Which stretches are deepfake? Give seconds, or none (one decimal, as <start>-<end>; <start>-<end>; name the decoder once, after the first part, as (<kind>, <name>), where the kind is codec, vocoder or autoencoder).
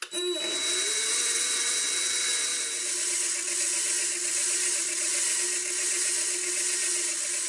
none